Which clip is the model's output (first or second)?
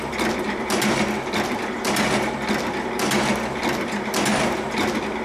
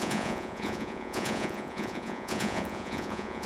second